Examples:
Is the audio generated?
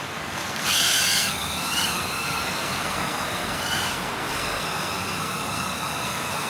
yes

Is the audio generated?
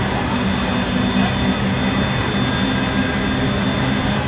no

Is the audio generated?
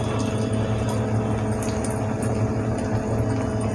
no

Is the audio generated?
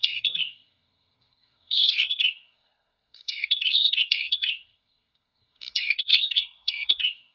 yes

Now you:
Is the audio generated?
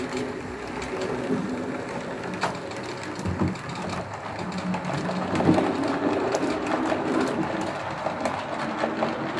no